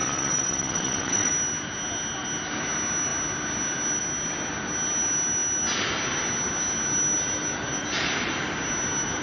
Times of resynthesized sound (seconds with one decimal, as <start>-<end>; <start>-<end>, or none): 0.0-1.3